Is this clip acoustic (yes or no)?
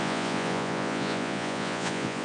no